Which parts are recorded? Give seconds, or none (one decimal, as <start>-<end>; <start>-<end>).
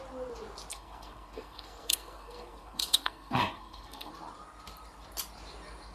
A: 0.0-0.7; 4.1-5.9